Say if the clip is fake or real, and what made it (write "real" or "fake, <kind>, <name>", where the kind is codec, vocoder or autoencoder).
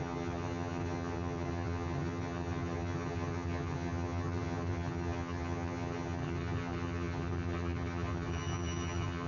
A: fake, vocoder, HiFi-GAN